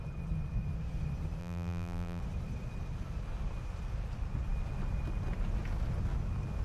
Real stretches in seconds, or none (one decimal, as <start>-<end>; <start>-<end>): 0.0-1.4; 2.2-6.6